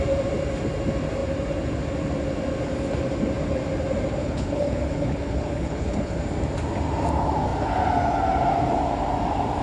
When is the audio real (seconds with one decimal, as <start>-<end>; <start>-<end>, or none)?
0.0-4.2; 6.2-9.6